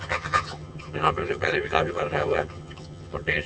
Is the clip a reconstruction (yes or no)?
yes